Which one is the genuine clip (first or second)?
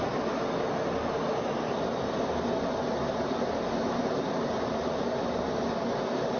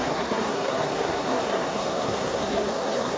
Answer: first